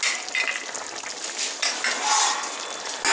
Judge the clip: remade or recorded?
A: recorded